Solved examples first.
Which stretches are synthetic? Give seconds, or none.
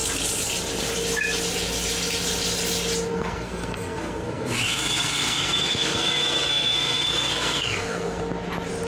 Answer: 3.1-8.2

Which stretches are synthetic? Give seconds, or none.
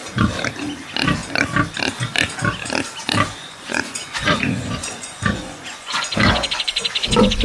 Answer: 3.4-7.4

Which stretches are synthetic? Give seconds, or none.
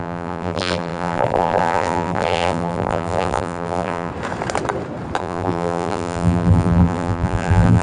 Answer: 0.0-4.1; 5.2-7.8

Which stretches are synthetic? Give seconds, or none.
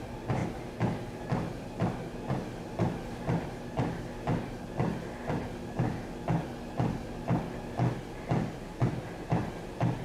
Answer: none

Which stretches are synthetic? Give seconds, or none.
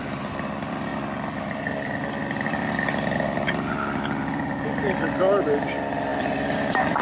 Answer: 0.9-5.1; 6.1-7.0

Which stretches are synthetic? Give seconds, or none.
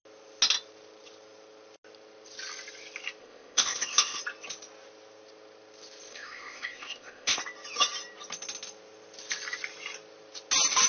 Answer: 3.2-4.2; 6.1-7.4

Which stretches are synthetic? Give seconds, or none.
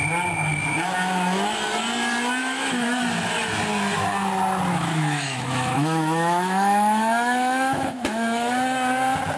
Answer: 2.4-3.0; 4.7-8.5